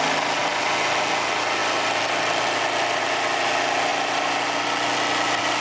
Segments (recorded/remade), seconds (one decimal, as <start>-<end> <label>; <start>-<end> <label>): 0.0-5.6 recorded